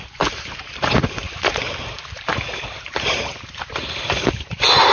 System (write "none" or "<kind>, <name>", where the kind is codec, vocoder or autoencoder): vocoder, BigVGAN v2